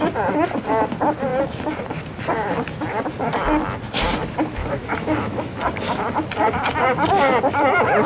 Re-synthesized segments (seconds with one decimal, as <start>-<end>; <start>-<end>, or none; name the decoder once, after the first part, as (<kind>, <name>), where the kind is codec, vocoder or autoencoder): 4.5-5.6 (autoencoder, DAC-VAE)